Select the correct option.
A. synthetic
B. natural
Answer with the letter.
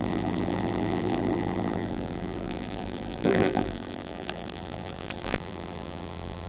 A